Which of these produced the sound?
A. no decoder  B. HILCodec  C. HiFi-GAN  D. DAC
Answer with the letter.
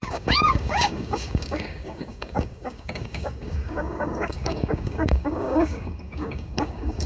D